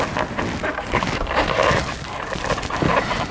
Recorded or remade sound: recorded